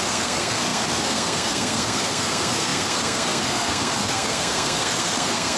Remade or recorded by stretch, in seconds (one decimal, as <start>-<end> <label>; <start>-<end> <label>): 0.0-5.6 remade